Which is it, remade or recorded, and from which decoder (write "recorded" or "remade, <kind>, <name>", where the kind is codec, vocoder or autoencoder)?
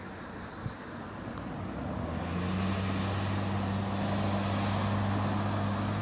recorded